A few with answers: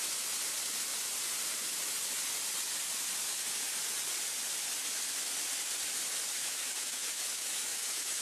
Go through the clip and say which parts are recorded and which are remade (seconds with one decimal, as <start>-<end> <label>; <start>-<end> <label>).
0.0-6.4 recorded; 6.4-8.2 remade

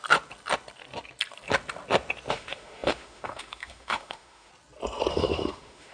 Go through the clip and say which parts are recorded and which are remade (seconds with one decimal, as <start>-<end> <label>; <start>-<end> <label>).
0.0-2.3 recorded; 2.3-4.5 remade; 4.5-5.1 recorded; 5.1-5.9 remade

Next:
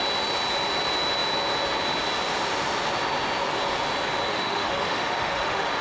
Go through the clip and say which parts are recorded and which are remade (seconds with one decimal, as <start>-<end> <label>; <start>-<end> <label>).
0.0-4.3 recorded; 4.3-5.8 remade

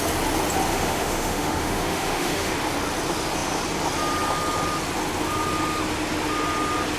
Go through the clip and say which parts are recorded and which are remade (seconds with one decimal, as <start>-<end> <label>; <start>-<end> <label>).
0.0-0.7 recorded; 0.7-2.5 remade; 2.5-7.0 recorded